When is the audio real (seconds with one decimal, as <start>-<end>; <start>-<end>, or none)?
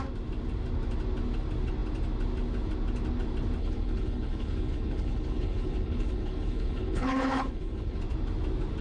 0.0-3.6; 8.0-8.8